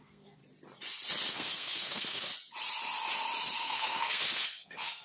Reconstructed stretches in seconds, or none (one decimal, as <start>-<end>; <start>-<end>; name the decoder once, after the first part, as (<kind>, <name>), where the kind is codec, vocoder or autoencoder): 0.0-0.4 (codec, SNAC); 1.3-2.3; 3.6-5.0